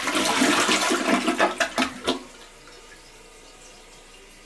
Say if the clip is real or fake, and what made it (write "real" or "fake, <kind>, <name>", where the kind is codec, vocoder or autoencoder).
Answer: real